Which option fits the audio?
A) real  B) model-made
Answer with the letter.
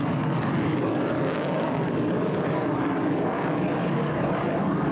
B